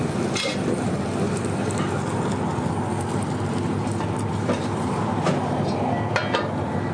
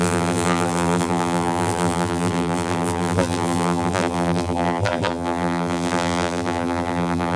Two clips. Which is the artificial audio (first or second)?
second